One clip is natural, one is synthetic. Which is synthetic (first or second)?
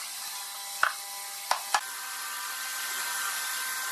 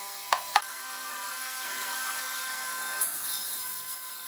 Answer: second